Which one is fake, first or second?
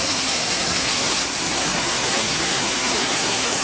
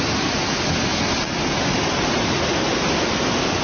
first